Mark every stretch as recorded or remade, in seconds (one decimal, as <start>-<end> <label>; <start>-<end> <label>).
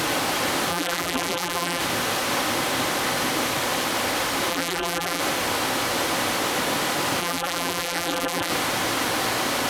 0.0-0.7 recorded; 0.7-1.8 remade; 1.8-4.5 recorded; 4.5-5.2 remade; 5.2-7.2 recorded; 7.2-8.5 remade; 8.5-9.7 recorded